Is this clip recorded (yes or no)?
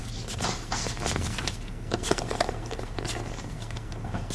no